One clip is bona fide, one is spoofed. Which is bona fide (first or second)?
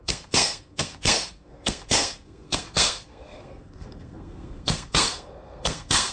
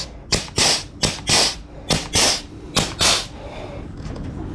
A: second